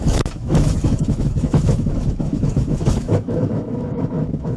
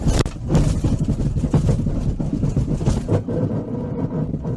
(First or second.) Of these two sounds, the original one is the second